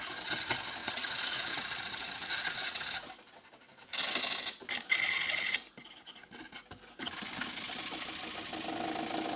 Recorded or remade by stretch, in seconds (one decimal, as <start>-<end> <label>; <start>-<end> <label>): 0.0-0.8 recorded; 0.8-3.1 remade; 3.1-9.4 recorded